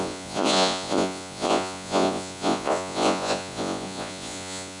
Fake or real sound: fake